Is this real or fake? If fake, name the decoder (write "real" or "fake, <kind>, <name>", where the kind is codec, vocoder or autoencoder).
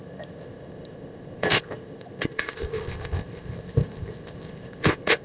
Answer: fake, codec, ZipCodec